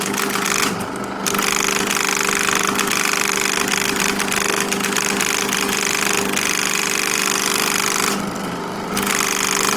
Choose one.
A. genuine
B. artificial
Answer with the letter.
A